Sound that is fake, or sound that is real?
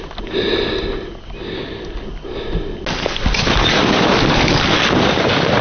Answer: real